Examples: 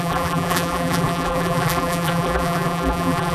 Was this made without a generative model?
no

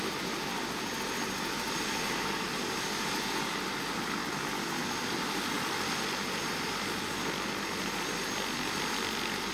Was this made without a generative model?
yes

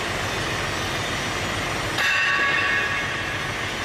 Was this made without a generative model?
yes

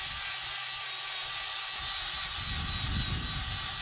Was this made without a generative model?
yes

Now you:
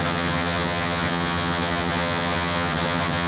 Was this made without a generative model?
no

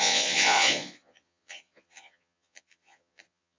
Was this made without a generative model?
no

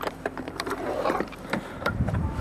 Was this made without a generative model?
no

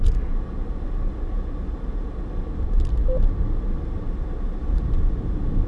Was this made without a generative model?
yes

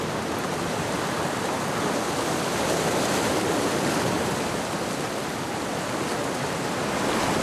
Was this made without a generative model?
yes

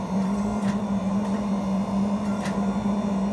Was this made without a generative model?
yes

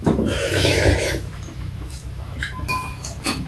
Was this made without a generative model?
no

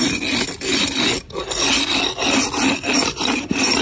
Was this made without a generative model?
yes